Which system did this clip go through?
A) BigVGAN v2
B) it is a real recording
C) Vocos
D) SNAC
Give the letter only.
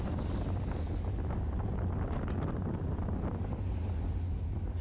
B